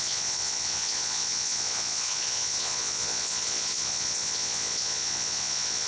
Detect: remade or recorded remade